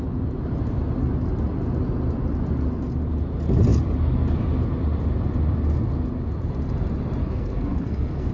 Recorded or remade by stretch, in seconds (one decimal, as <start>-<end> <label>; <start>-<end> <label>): 0.0-7.2 recorded; 7.2-8.3 remade